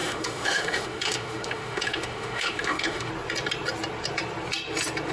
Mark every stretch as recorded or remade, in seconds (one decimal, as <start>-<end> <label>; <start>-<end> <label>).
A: 0.0-3.1 remade; 3.1-5.1 recorded